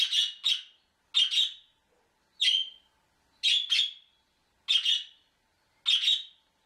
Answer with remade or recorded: recorded